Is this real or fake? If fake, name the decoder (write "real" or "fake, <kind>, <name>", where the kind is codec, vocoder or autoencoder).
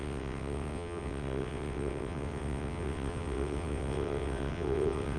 fake, vocoder, WaveNeXt